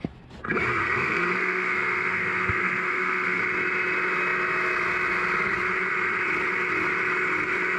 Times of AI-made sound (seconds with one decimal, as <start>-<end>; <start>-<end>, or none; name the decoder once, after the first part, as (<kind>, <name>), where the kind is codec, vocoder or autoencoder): 0.8-3.4 (codec, SNAC)